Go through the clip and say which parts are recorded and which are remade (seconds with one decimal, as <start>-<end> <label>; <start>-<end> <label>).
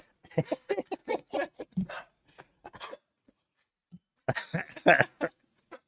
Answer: 0.0-1.0 recorded; 1.0-3.7 remade; 3.7-5.9 recorded